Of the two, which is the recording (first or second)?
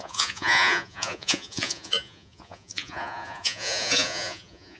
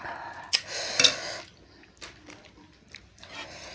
second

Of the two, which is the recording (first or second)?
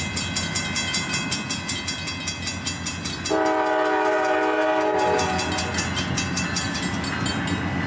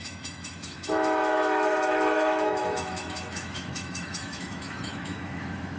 first